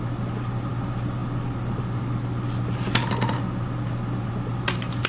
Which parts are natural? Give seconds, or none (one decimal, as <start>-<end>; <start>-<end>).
0.0-5.1